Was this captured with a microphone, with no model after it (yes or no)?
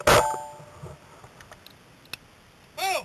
yes